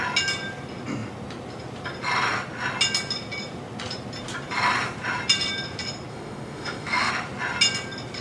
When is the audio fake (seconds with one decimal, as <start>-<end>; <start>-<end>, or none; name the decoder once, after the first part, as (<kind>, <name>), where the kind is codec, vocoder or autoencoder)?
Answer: 6.1-7.1 (autoencoder, DAC-VAE)